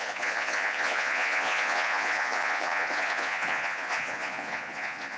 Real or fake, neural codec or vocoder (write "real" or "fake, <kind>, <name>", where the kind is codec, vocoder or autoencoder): fake, vocoder, Vocos